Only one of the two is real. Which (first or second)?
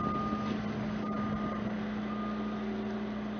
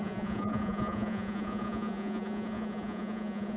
first